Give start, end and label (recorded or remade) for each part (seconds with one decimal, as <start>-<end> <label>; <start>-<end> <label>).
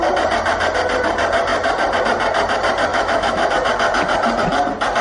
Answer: 0.0-2.9 recorded; 2.9-3.5 remade; 3.5-5.0 recorded